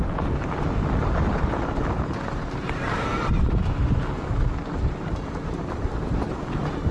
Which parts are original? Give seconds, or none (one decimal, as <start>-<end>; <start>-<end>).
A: 0.0-4.6; 6.4-6.9